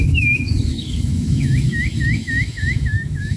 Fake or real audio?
fake